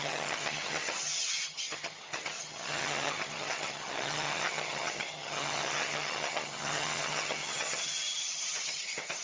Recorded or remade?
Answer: remade